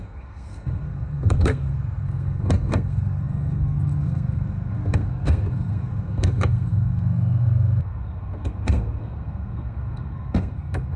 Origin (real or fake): fake